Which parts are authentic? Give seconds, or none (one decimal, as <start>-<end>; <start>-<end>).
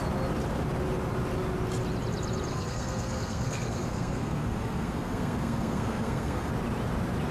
0.0-2.5; 6.5-7.3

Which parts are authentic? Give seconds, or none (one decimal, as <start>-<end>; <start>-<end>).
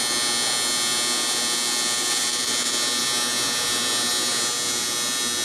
0.0-5.4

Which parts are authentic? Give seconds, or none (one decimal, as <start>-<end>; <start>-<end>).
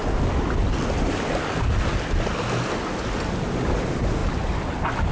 0.0-5.1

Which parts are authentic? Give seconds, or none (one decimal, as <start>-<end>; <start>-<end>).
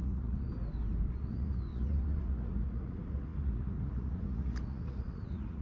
0.5-1.1